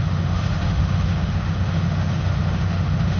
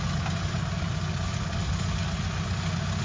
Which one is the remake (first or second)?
first